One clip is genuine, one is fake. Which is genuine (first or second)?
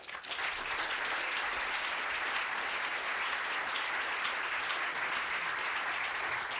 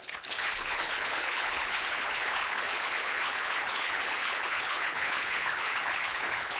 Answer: first